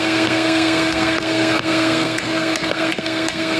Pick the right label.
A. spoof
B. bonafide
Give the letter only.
A